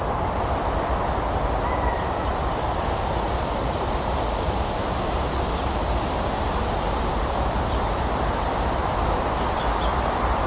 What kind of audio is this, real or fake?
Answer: real